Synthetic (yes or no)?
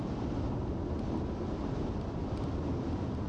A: no